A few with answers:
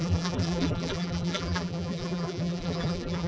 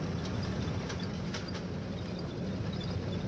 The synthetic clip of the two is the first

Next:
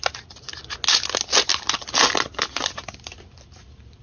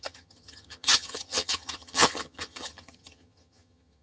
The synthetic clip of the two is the second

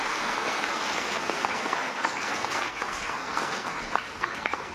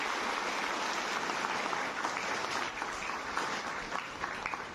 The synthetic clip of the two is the first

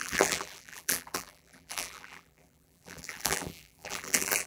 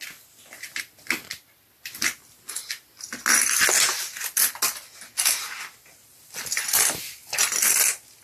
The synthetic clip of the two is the first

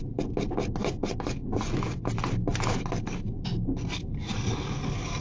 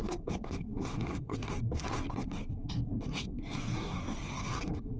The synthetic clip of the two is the second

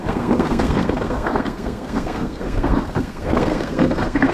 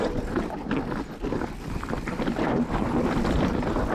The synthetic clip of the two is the first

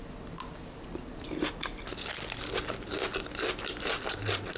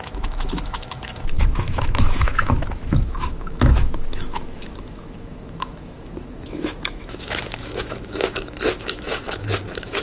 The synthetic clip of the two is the second